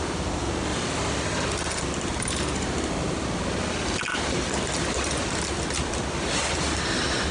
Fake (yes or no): yes